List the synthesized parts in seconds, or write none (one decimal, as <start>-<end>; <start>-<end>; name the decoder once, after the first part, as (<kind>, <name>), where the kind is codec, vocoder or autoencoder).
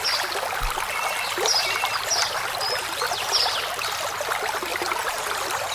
4.7-5.2 (vocoder, BigVGAN v2)